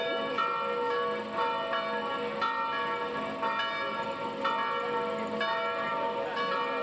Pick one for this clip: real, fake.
real